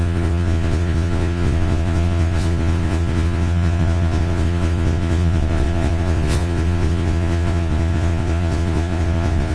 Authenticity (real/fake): fake